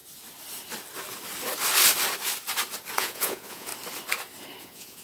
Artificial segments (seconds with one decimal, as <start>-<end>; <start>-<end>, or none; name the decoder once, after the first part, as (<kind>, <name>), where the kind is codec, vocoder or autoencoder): 3.0-3.7 (vocoder, Vocos); 4.6-5.0